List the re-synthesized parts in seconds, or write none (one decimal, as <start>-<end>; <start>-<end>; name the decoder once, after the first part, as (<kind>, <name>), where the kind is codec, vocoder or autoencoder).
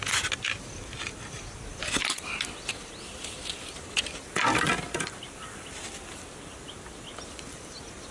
1.7-6.3 (vocoder, BigVGAN v2)